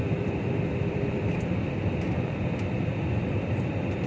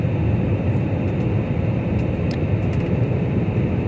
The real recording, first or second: second